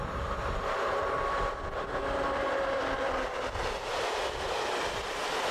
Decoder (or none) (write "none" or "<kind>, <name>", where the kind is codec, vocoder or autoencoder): none